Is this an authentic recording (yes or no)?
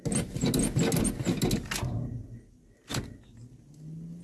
yes